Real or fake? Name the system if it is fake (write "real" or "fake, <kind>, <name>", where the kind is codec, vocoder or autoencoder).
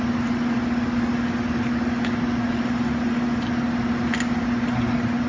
real